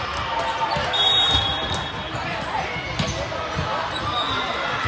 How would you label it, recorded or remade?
recorded